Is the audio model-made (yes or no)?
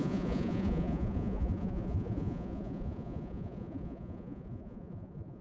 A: yes